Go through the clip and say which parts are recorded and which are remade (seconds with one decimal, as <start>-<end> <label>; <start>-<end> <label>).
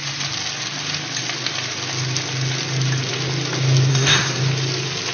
0.0-3.9 recorded; 3.9-4.4 remade; 4.4-5.1 recorded